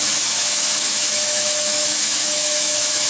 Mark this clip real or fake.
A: fake